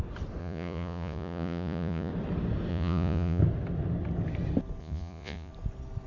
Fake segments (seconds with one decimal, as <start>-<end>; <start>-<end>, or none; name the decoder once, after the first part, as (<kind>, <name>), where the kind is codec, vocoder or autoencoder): 0.4-2.1 (vocoder, Vocos); 2.7-3.4; 4.8-5.5